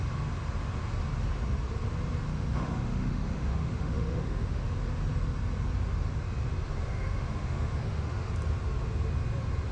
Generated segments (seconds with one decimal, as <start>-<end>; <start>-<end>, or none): 2.3-4.7; 6.8-8.3